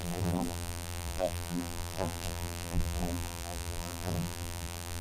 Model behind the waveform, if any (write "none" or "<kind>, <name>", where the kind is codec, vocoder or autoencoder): vocoder, BigVGAN v2